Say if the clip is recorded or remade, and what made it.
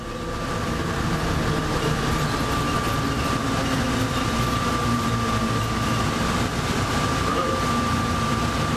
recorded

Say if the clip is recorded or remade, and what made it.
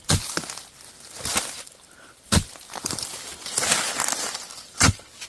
recorded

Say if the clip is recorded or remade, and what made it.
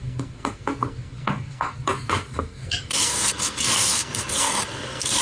remade, codec, SNAC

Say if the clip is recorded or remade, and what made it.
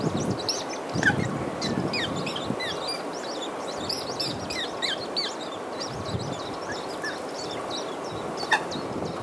recorded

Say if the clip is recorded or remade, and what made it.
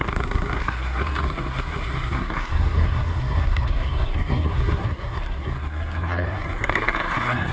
remade, codec, SNAC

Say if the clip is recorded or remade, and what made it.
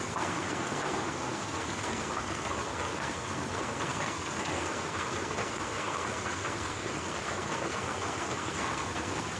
remade, codec, SNAC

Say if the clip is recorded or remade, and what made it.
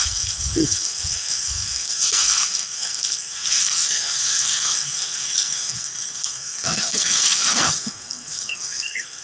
remade, codec, SNAC